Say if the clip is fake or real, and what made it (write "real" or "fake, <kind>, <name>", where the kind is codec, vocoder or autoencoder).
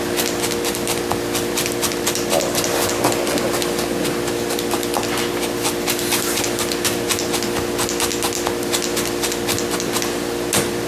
real